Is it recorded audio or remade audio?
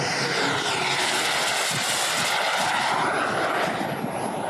recorded